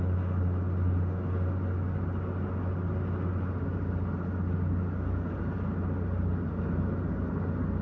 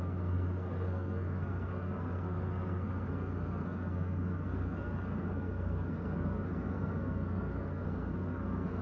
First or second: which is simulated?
second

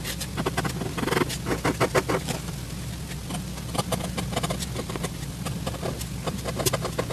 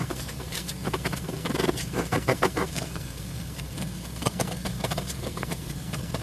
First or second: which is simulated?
second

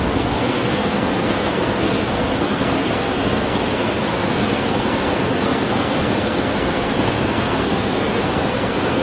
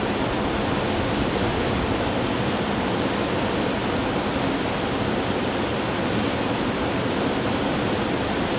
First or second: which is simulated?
first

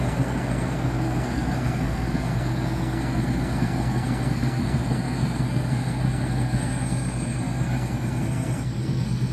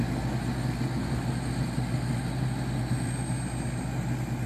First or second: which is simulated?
first